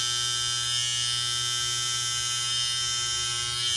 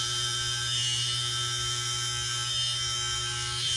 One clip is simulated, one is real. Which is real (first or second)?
first